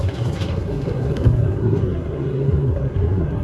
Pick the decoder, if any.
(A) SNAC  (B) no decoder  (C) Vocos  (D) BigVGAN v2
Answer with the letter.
A